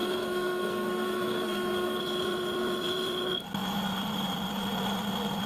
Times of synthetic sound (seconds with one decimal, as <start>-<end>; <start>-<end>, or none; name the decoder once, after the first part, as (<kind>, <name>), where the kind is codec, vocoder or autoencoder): 0.0-2.0 (codec, SNAC)